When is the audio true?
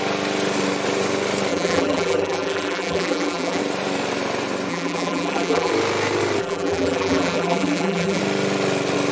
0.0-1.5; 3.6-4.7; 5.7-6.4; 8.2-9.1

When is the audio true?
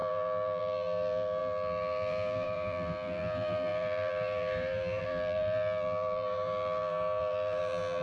none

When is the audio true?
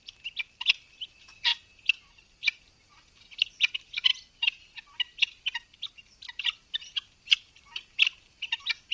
0.0-8.9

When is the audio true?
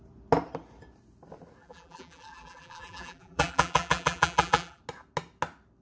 0.0-1.6; 4.8-5.8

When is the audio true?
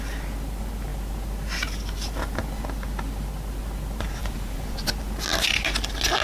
0.0-4.2; 4.9-6.2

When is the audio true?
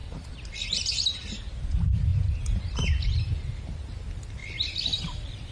4.4-5.5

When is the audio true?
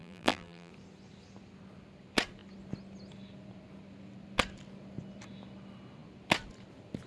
0.7-7.1